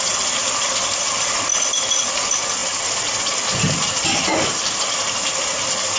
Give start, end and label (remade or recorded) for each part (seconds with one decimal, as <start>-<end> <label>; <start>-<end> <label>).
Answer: 0.0-6.0 recorded